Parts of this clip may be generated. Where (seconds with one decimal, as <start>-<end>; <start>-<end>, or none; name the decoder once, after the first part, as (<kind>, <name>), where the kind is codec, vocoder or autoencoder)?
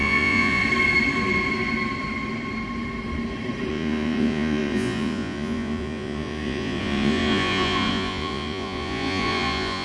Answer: 0.0-0.6 (vocoder, Vocos); 3.7-9.8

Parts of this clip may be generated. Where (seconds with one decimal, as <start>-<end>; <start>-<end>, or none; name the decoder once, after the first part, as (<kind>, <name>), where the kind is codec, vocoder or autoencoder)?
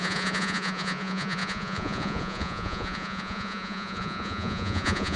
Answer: 0.0-5.2 (vocoder, Vocos)